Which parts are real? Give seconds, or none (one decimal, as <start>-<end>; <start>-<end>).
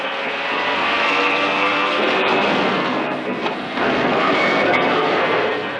none